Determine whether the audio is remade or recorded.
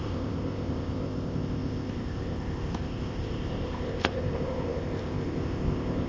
remade